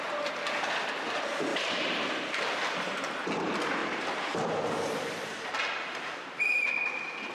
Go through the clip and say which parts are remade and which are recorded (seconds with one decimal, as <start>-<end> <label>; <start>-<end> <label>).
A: 0.0-1.5 recorded; 1.5-2.4 remade; 2.4-3.8 recorded; 3.8-6.7 remade; 6.7-7.3 recorded

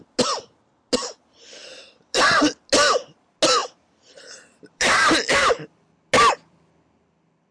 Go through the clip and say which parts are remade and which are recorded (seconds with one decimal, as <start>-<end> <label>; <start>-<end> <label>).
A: 0.0-1.6 recorded; 1.6-2.2 remade; 2.2-3.6 recorded; 3.6-5.5 remade; 5.5-7.5 recorded

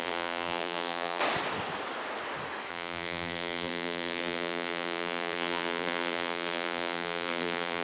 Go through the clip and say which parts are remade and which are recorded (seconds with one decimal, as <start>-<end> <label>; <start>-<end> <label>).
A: 0.0-1.2 remade; 1.2-2.7 recorded; 2.7-7.8 remade

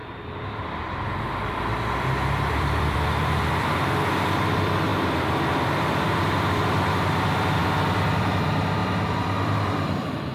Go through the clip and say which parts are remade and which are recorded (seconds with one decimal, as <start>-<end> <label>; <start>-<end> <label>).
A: 0.0-0.8 recorded; 0.8-7.6 remade; 7.6-8.2 recorded; 8.2-10.3 remade

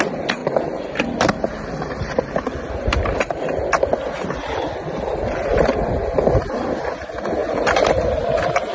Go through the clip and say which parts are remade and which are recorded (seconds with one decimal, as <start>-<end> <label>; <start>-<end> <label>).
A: 0.0-0.4 recorded; 0.4-3.4 remade; 3.4-7.4 recorded; 7.4-8.1 remade; 8.1-8.7 recorded